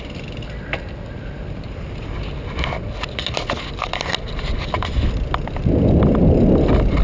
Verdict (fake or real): real